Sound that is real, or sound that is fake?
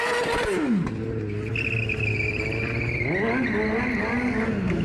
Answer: real